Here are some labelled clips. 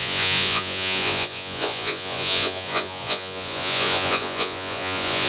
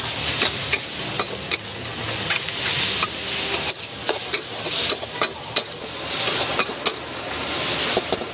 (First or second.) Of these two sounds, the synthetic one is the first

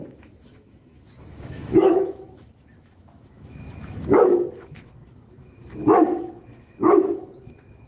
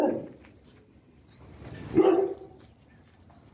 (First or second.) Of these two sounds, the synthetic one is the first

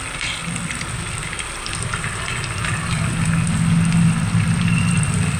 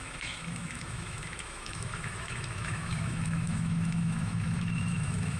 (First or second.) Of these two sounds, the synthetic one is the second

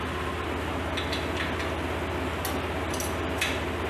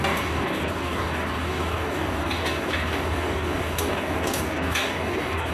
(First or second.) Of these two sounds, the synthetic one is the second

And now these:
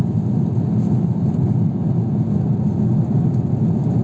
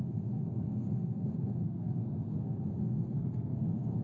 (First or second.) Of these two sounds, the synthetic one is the second